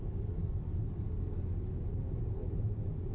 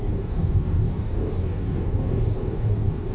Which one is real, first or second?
first